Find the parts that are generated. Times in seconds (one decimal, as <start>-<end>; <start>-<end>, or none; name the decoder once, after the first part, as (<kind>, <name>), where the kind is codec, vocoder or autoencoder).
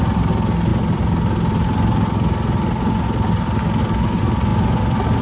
none